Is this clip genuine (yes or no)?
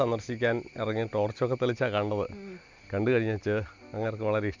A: yes